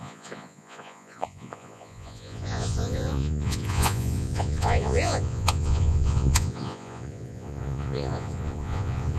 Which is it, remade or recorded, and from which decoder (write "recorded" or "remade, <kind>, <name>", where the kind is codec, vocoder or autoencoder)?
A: remade, vocoder, Vocos